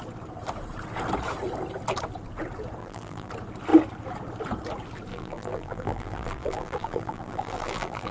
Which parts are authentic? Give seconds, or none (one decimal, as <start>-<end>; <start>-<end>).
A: 0.0-2.8; 3.3-5.1